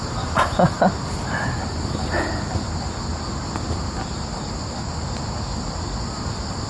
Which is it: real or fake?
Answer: real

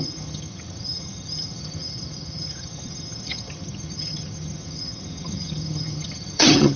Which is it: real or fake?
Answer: fake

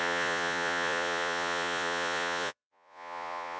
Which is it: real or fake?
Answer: fake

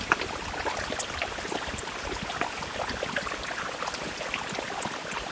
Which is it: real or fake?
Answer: real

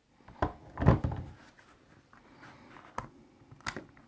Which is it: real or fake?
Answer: real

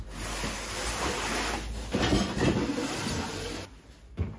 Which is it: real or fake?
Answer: real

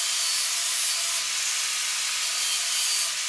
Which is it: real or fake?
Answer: real